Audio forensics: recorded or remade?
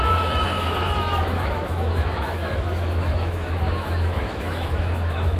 remade